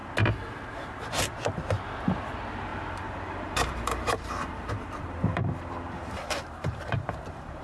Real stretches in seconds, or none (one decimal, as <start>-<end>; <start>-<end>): 0.0-2.7